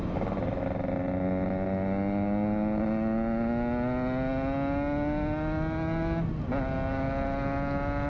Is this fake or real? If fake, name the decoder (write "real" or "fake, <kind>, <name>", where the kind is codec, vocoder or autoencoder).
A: real